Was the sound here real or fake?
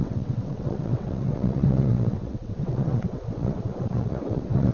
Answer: fake